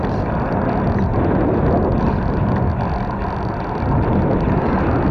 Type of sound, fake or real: real